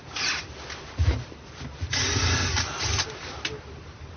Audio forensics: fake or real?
real